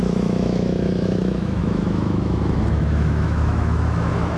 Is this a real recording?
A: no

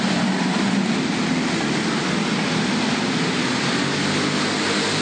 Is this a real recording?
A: yes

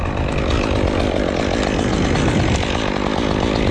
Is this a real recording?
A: yes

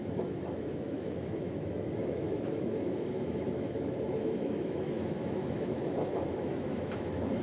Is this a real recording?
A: no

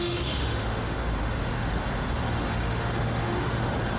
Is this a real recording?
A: no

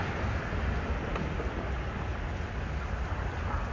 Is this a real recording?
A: yes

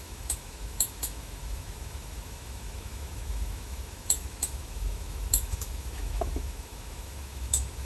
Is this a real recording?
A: no